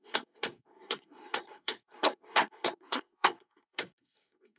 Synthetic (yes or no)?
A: yes